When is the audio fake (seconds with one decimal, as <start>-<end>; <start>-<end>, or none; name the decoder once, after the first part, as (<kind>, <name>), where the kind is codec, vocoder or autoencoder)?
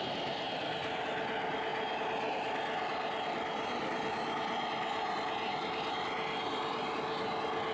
none